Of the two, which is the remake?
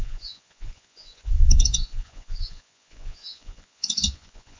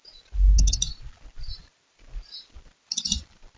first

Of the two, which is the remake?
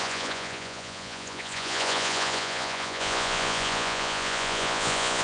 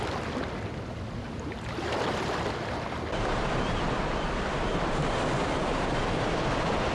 first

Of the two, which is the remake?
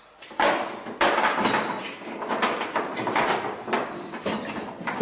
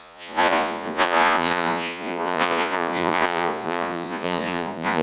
second